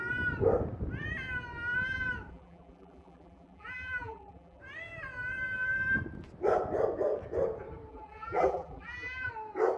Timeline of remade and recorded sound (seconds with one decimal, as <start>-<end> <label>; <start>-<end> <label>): 0.0-2.3 recorded; 2.3-4.6 remade; 4.6-7.9 recorded; 7.9-9.3 remade; 9.3-9.8 recorded